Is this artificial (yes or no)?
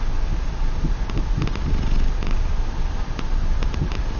no